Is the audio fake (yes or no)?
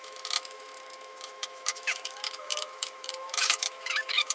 yes